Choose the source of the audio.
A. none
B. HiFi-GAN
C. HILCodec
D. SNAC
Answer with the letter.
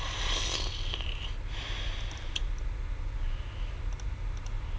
A